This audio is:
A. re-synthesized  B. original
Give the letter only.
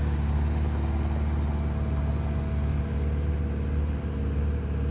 B